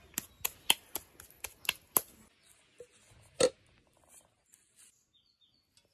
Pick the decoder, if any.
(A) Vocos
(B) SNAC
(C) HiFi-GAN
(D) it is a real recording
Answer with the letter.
D